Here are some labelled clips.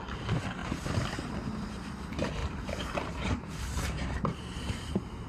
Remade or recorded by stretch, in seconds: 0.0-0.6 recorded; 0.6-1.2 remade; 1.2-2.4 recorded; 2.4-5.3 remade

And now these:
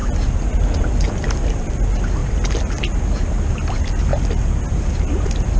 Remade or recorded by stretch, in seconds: 0.0-5.6 recorded

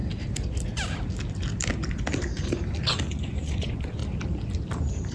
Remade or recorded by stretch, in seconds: 0.0-3.1 recorded; 3.1-4.0 remade; 4.0-5.1 recorded